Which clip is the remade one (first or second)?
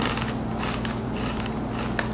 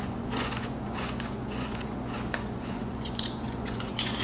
second